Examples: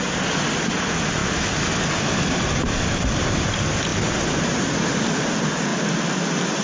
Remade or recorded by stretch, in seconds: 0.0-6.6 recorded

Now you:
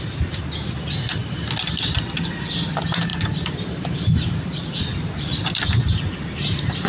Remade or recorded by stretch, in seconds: 0.0-1.2 remade; 1.2-1.7 recorded; 1.7-6.9 remade

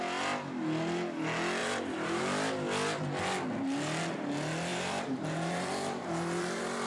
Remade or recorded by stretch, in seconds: 0.0-1.6 recorded; 1.6-2.2 remade; 2.2-4.7 recorded; 4.7-6.9 remade

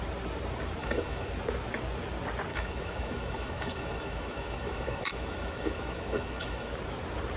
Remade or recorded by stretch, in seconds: 0.0-0.8 recorded; 0.8-1.3 remade; 1.3-2.5 recorded; 2.5-6.7 remade; 6.7-7.4 recorded

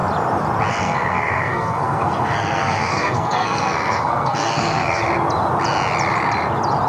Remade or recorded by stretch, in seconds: 0.0-0.7 recorded; 0.7-5.0 remade; 5.0-6.9 recorded

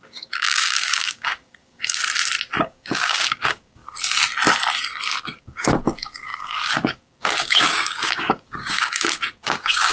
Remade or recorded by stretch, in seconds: 0.0-2.0 remade; 2.0-2.6 recorded; 2.6-3.8 remade; 3.8-5.4 recorded; 5.4-9.9 remade